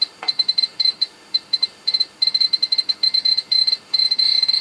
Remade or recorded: remade